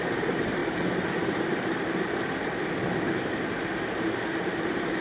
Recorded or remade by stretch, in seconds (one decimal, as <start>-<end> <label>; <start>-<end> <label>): 0.0-5.0 recorded